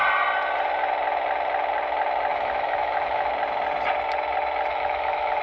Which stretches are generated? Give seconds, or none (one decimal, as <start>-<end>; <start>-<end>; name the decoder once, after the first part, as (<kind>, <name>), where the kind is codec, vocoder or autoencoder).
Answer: 2.3-3.3 (autoencoder, DAC-VAE); 4.7-5.4